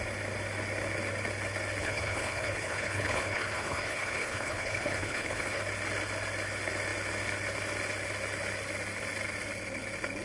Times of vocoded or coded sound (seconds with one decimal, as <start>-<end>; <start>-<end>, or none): 1.8-5.6